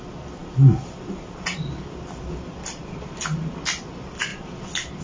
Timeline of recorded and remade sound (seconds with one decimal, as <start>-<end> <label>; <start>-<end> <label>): 0.0-5.0 recorded